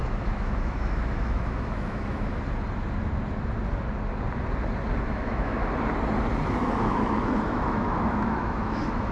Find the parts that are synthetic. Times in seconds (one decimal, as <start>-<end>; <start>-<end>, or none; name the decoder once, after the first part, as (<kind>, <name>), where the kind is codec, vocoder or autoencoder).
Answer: 0.0-2.3 (autoencoder, DAC-VAE); 5.0-5.6; 6.8-9.1